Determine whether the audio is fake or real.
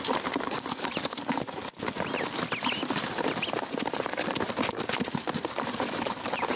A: real